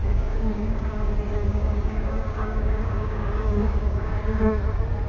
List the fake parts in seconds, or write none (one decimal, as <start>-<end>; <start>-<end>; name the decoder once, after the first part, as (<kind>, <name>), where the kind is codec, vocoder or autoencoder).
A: 0.0-1.1 (codec, DAC); 1.5-4.6